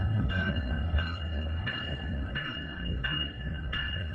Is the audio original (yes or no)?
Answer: no